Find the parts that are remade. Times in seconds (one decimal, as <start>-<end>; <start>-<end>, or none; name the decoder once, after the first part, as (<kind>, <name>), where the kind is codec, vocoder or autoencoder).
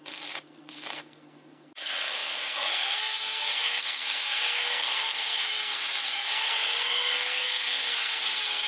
0.0-8.7 (codec, SNAC)